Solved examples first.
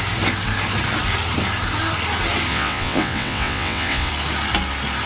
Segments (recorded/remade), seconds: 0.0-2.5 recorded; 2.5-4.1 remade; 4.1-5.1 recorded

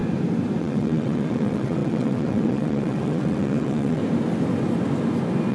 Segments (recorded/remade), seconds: 0.0-0.6 recorded; 0.6-4.0 remade; 4.0-5.5 recorded

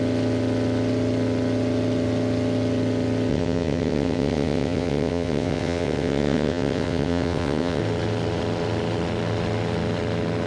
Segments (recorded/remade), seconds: 0.0-3.3 recorded; 3.3-7.8 remade; 7.8-10.5 recorded

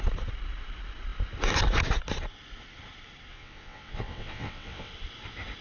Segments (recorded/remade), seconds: 0.0-3.3 recorded; 3.3-4.9 remade; 4.9-5.6 recorded

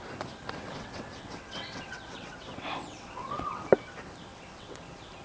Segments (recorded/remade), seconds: 0.0-0.6 recorded; 0.6-3.6 remade; 3.6-4.3 recorded; 4.3-4.8 remade; 4.8-5.2 recorded

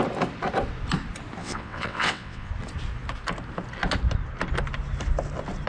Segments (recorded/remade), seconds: 0.0-1.4 recorded; 1.4-2.5 remade; 2.5-5.7 recorded